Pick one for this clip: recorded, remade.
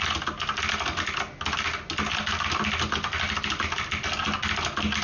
recorded